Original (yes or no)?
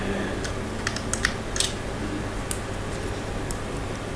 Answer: yes